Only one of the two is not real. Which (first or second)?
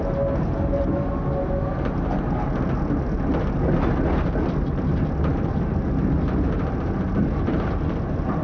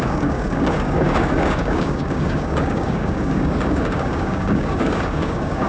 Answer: second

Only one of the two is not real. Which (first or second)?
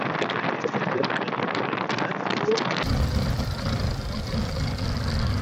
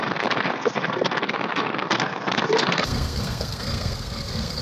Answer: second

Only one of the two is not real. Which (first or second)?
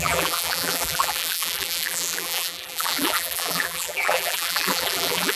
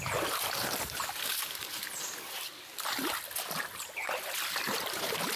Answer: first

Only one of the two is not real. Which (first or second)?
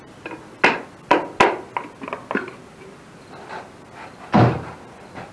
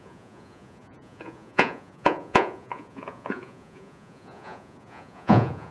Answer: second